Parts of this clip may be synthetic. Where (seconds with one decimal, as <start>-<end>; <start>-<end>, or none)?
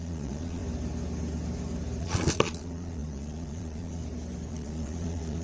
0.0-0.6; 2.0-4.0; 4.5-5.4